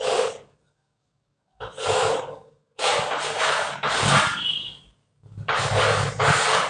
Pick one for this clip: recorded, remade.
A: remade